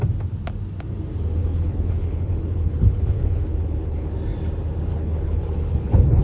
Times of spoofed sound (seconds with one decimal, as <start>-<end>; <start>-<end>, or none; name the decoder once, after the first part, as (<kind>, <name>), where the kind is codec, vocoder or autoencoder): 1.4-4.1 (codec, HILCodec); 4.9-6.2